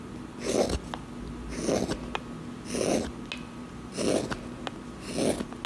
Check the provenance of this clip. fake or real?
real